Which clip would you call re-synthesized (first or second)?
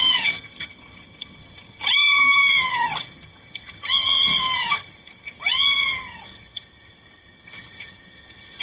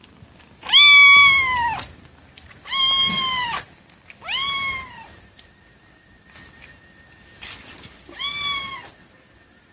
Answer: first